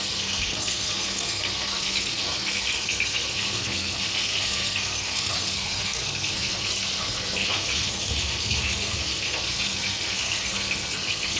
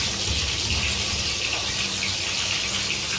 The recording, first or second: second